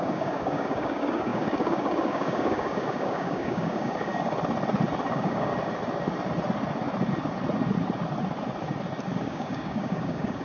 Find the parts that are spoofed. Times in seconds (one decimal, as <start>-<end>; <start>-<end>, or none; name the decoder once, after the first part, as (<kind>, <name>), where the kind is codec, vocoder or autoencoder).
0.0-4.1 (codec, DAC); 5.1-5.5; 9.2-10.4